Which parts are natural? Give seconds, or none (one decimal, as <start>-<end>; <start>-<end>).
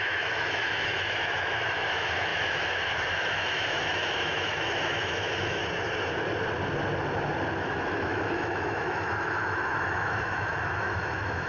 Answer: 5.6-7.6